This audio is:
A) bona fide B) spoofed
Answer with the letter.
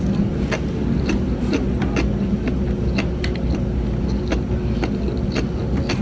A